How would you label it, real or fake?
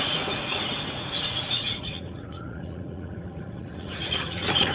fake